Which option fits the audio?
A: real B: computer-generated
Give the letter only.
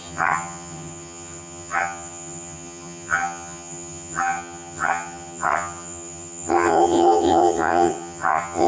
B